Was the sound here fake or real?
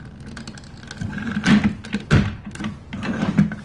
real